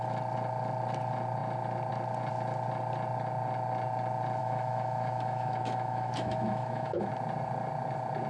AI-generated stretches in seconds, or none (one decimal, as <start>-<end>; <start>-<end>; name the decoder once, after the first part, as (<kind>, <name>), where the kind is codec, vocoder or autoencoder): 4.4-7.1 (autoencoder, DAC-VAE)

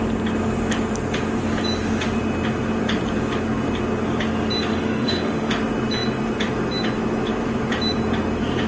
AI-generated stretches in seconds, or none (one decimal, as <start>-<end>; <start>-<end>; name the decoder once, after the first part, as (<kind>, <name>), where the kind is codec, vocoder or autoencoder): 4.7-5.5 (autoencoder, DAC-VAE)

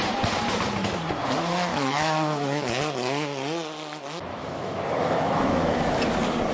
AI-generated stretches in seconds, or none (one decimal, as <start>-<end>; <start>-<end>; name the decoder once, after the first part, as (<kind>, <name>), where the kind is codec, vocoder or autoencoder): 1.7-2.8 (autoencoder, DAC-VAE); 4.3-5.8

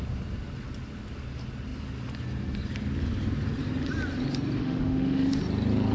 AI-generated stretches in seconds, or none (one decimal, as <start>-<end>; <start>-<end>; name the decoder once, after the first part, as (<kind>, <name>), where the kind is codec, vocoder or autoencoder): 4.6-5.4 (autoencoder, DAC-VAE)

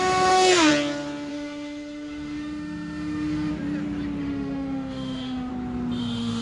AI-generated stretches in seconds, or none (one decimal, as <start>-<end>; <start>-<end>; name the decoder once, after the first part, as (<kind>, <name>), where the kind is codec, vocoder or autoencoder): 0.0-0.7 (autoencoder, DAC-VAE); 1.3-3.5; 4.2-5.5; 6.0-6.4

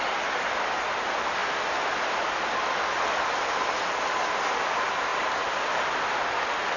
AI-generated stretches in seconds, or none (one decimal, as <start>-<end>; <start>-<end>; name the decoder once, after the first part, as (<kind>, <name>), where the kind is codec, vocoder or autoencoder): none